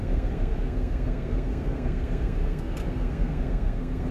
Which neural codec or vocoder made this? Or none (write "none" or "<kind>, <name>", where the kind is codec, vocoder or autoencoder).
codec, SNAC